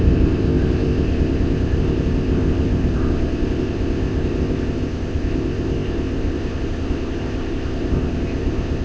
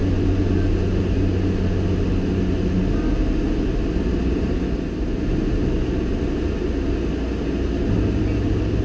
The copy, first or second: first